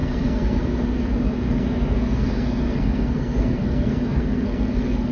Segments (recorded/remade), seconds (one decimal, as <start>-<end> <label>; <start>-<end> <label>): 0.0-5.1 remade